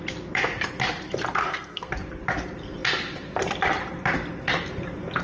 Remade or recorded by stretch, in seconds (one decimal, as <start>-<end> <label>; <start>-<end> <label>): 0.0-1.4 recorded; 1.4-1.9 remade; 1.9-5.2 recorded